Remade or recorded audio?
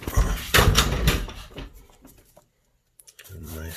remade